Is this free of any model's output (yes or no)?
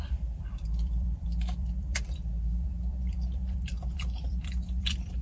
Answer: no